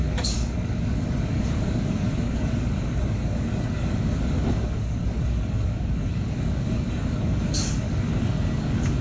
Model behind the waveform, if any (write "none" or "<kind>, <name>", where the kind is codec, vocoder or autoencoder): codec, DAC